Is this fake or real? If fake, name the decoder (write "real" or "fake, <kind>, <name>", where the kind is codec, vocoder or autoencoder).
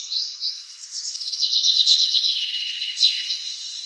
fake, codec, SNAC